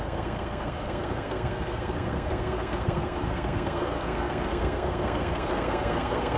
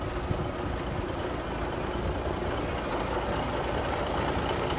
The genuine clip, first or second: second